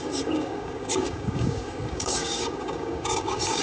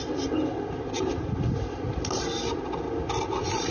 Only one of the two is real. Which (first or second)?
second